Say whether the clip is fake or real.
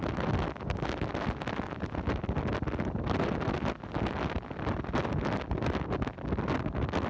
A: real